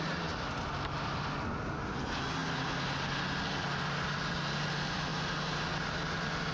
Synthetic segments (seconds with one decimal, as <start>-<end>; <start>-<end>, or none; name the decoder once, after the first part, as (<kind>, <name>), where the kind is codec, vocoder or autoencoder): none

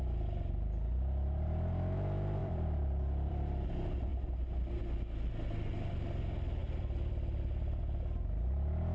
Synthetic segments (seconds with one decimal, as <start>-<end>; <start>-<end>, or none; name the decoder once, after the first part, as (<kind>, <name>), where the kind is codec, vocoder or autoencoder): 2.4-3.3 (vocoder, BigVGAN v2); 4.1-4.8; 6.6-7.8

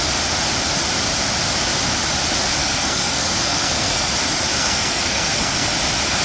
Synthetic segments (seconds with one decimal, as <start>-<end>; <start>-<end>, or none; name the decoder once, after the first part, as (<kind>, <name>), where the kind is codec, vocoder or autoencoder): 2.6-4.1 (codec, SNAC); 4.5-5.7

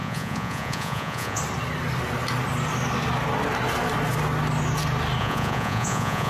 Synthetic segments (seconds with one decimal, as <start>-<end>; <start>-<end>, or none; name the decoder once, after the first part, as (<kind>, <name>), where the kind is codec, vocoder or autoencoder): 0.0-1.4 (vocoder, Vocos); 5.2-6.3